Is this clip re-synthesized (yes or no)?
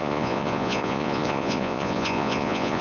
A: yes